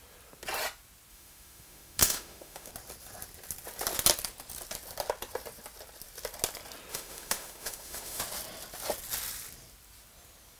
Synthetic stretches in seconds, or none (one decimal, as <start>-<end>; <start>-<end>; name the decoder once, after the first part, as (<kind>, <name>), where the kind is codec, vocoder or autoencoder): 1.1-2.7 (autoencoder, DAC-VAE); 6.9-8.2